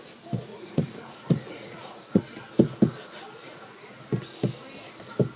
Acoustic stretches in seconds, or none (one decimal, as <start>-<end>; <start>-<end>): 0.0-0.5; 2.2-3.4; 3.9-5.4